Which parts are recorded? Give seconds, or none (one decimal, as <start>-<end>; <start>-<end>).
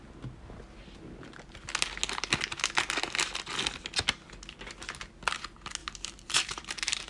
0.0-5.8